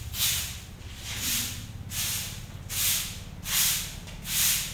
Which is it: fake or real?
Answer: real